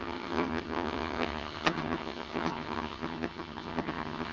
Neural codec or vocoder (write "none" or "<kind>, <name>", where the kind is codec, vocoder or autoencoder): vocoder, HiFi-GAN